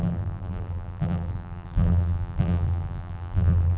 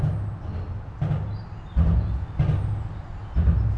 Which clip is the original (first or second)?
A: second